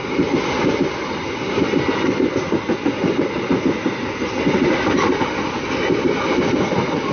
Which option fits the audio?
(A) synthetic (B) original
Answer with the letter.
B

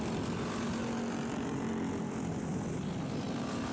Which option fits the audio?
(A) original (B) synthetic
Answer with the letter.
A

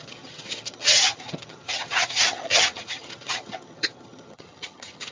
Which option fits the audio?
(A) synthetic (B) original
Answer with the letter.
A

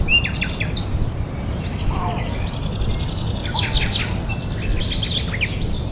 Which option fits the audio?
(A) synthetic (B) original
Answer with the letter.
B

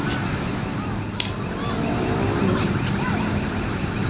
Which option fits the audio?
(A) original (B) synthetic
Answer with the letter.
A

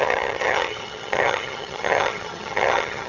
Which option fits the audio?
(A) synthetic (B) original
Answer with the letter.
A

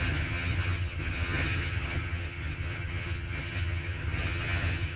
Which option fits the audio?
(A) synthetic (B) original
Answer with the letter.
A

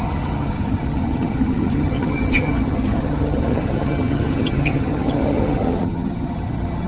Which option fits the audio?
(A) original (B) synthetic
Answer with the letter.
B